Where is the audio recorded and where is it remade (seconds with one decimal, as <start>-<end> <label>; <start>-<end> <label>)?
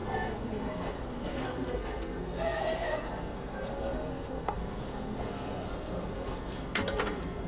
0.0-7.5 remade